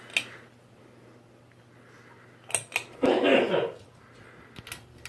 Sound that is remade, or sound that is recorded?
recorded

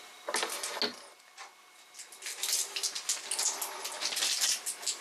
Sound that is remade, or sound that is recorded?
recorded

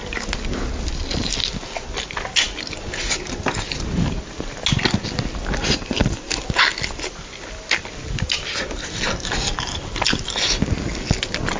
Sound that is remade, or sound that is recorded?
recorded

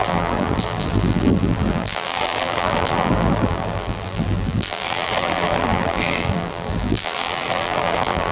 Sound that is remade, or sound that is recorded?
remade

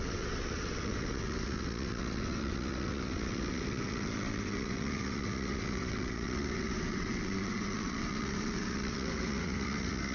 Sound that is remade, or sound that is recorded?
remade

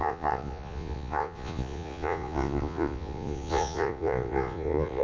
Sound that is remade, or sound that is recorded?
remade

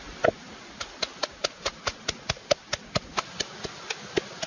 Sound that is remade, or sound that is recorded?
recorded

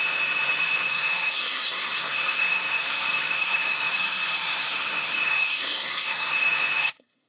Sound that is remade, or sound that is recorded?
remade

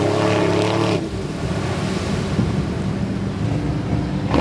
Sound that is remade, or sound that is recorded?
recorded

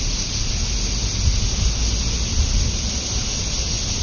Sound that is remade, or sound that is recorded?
recorded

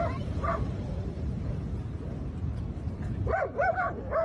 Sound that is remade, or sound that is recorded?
remade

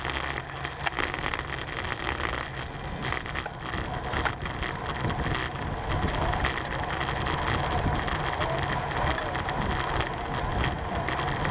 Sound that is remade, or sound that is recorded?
recorded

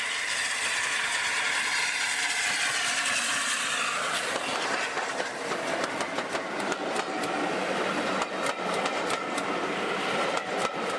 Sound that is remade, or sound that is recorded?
recorded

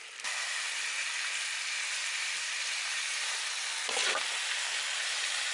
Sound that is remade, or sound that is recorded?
recorded